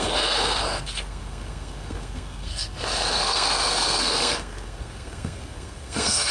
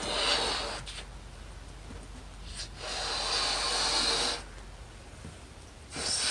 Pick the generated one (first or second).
first